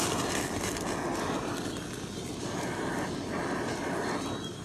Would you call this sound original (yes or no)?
yes